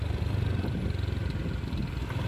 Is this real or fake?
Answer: real